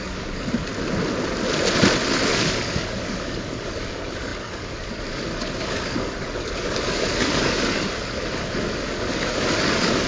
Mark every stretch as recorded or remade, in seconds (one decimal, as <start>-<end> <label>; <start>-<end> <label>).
0.0-0.7 remade; 0.7-2.4 recorded; 2.4-10.1 remade